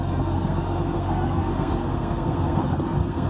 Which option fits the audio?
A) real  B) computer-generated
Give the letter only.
B